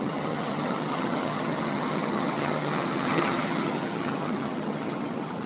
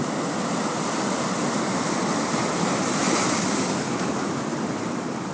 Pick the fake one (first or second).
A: first